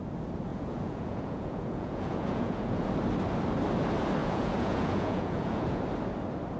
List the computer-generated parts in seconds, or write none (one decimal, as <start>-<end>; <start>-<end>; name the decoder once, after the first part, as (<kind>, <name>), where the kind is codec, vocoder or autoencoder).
0.5-2.9 (vocoder, Vocos); 4.2-5.8